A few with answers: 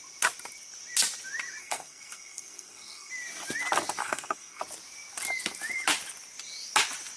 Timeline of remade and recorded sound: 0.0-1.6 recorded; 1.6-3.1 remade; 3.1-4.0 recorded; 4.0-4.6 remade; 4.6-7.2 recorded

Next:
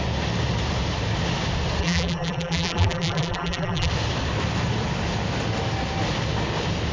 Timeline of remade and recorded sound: 0.0-1.8 recorded; 1.8-3.9 remade; 3.9-6.9 recorded

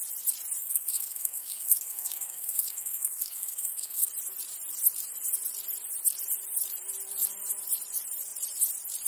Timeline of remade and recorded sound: 0.0-0.6 recorded; 0.6-4.1 remade; 4.1-9.1 recorded

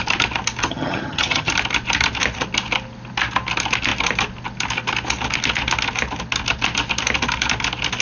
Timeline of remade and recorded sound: 0.0-0.6 recorded; 0.6-1.5 remade; 1.5-8.0 recorded

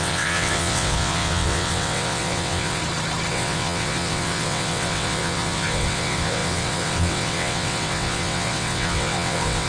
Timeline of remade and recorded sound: 0.0-2.8 remade; 2.8-3.3 recorded; 3.3-9.7 remade

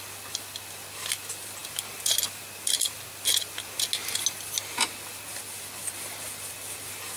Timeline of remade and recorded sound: 0.0-7.2 recorded

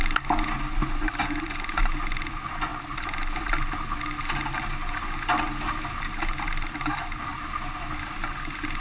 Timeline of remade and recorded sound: 0.0-8.8 recorded

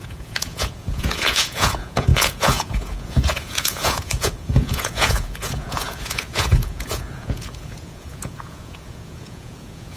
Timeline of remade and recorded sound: 0.0-10.0 remade